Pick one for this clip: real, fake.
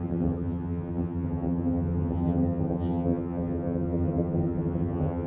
fake